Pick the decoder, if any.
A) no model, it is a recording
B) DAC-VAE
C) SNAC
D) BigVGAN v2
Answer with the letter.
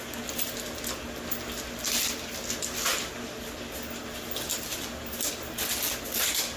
A